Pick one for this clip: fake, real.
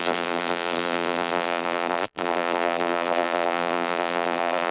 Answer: fake